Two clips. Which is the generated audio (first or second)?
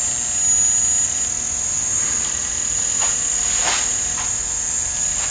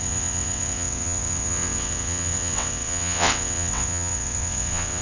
second